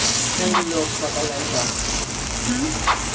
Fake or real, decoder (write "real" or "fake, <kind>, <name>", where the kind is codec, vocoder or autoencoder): real